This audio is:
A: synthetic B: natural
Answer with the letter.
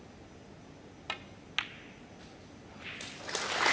B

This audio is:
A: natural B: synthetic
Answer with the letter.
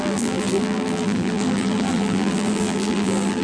B